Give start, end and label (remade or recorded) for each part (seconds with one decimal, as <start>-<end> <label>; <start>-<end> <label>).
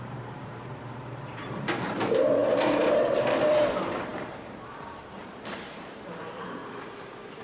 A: 0.0-7.4 remade